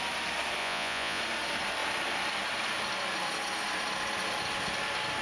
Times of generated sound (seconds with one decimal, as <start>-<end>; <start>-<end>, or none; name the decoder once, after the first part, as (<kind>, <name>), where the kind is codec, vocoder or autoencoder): 0.6-1.2 (vocoder, Vocos)